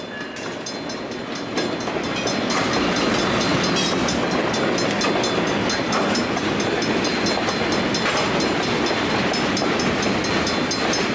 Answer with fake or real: real